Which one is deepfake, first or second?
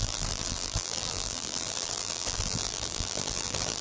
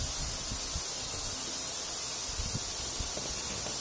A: first